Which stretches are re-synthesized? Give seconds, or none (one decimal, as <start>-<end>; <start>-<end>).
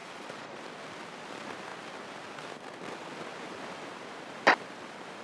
0.0-0.6